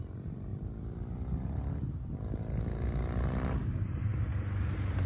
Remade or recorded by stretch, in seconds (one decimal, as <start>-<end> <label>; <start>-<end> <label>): 0.0-5.1 recorded